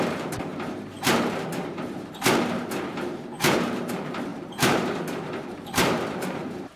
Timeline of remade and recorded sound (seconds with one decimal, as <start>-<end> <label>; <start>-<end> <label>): 0.0-6.8 remade